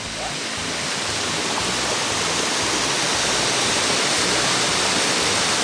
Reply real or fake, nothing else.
real